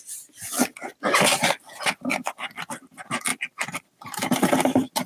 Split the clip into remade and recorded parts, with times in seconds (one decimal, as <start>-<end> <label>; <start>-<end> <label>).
0.0-5.1 recorded